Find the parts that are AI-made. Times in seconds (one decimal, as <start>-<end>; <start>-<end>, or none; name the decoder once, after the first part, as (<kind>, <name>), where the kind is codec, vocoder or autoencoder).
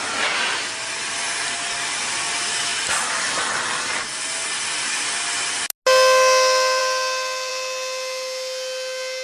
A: 2.7-4.2 (vocoder, BigVGAN v2)